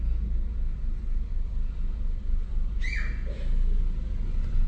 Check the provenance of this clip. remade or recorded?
recorded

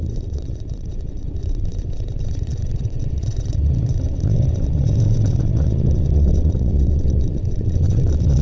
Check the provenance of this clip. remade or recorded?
remade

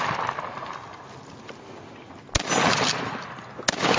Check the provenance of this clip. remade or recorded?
recorded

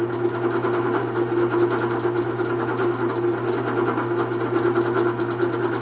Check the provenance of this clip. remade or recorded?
recorded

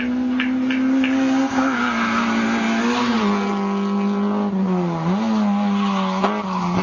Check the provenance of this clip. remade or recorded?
recorded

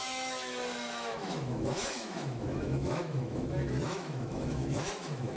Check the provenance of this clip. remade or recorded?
remade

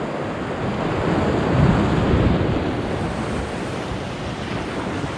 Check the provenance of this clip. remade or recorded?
recorded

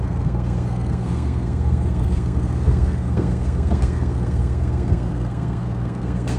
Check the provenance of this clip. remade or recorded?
remade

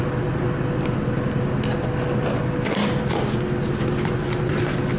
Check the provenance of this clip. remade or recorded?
recorded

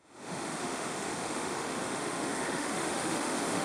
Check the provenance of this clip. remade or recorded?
remade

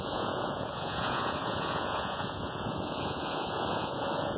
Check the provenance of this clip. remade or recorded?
remade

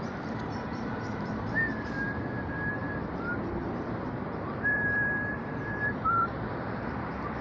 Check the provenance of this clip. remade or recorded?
remade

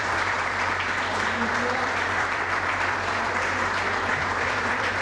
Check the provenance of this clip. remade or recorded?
remade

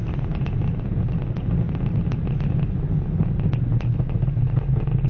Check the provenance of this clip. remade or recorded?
recorded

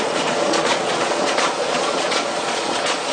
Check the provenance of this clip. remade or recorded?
remade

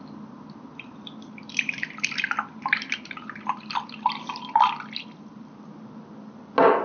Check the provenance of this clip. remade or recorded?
recorded